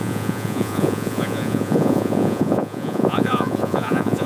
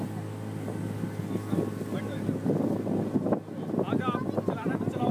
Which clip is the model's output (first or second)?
first